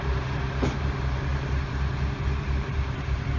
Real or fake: fake